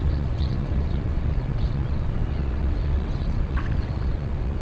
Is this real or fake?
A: fake